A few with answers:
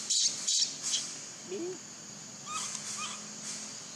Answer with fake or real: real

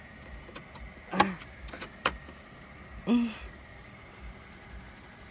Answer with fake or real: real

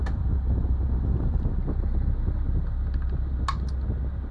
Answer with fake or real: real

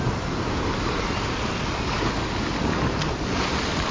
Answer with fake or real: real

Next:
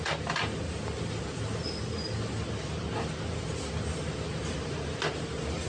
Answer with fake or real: real